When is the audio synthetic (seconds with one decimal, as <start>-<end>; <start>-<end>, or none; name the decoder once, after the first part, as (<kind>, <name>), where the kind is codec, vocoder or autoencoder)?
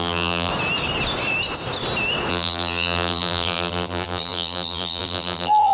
0.0-0.5 (vocoder, BigVGAN v2); 2.3-5.7